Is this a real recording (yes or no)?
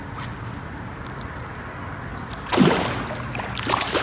yes